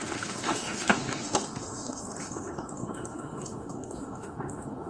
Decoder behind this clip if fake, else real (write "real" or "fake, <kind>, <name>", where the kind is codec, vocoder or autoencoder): fake, autoencoder, DAC-VAE